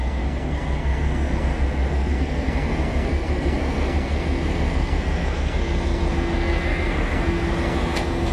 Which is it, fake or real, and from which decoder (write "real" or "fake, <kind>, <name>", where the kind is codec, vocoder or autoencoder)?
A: fake, codec, SNAC